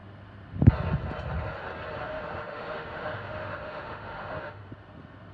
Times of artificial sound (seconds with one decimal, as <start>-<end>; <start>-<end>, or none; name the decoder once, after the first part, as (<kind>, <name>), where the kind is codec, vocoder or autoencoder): 2.1-4.7 (autoencoder, DAC-VAE)